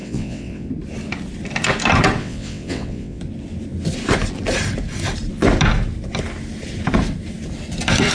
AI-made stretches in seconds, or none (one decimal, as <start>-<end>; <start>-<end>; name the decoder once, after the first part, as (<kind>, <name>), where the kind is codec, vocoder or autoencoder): 0.0-0.7 (vocoder, WaveNeXt); 2.2-3.2